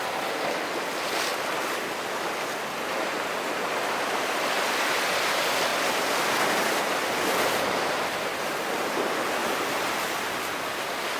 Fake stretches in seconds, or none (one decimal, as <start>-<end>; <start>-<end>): 1.3-2.0; 5.7-7.8; 9.4-10.7